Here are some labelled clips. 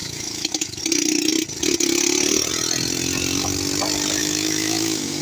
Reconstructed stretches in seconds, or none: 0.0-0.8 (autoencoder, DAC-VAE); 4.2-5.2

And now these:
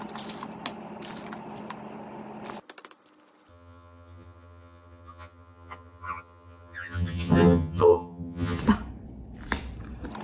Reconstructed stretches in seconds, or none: 3.5-8.6 (vocoder, HiFi-GAN)

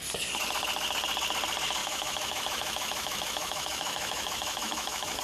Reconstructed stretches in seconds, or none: 1.8-5.2 (autoencoder, DAC-VAE)

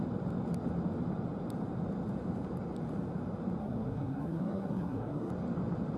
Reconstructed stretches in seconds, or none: 3.6-5.3 (codec, SNAC)

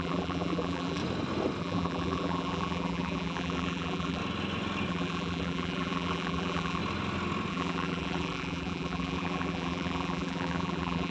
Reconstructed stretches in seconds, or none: 0.0-1.0 (vocoder, BigVGAN v2); 1.6-4.2; 4.9-6.8; 7.5-11.1

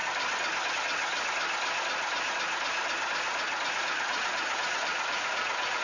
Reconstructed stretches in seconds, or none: 0.7-1.1 (vocoder, Vocos); 3.7-5.8

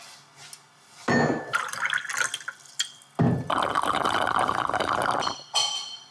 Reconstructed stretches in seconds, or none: none

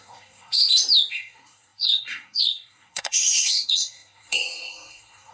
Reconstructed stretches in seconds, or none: 0.0-0.6 (codec, SNAC); 1.1-5.3